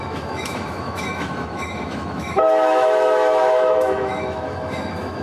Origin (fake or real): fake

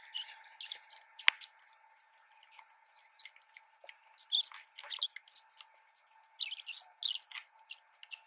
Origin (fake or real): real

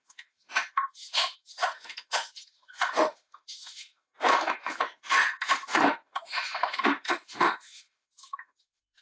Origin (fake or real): fake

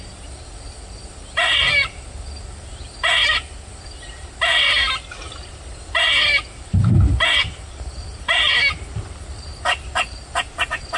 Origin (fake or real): real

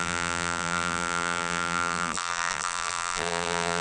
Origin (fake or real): fake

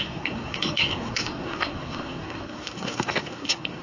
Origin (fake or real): fake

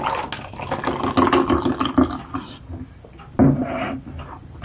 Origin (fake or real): real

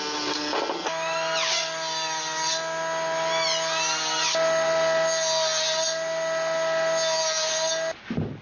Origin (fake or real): real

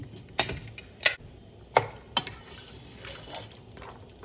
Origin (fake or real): real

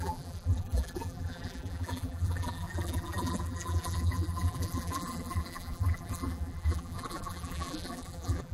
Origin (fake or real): fake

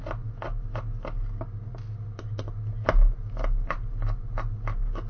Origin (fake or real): real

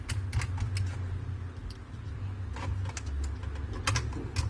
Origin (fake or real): real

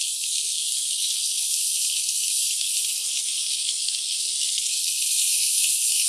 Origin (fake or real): fake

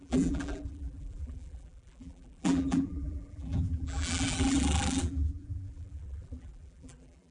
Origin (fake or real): fake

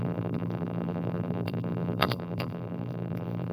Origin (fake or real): fake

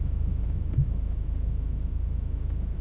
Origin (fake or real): fake